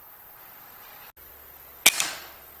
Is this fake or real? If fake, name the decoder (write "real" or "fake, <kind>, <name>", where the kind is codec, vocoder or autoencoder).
real